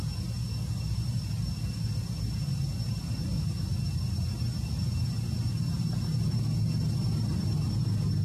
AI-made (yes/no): no